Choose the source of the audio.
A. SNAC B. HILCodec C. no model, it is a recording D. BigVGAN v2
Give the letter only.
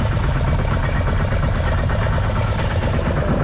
C